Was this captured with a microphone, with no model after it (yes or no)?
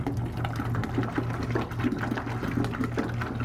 yes